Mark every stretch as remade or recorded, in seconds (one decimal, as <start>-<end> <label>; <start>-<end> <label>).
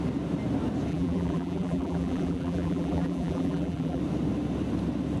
0.0-0.9 recorded; 0.9-4.0 remade; 4.0-5.2 recorded